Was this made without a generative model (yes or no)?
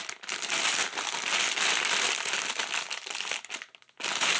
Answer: yes